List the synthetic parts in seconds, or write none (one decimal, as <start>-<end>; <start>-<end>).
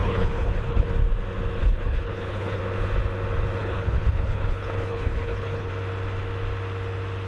0.0-0.9; 1.6-2.6; 3.6-5.7